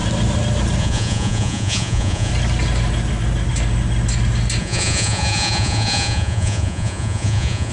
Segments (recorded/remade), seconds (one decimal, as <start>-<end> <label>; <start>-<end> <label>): 0.0-0.8 recorded; 0.8-2.3 remade; 2.3-4.6 recorded; 4.6-7.7 remade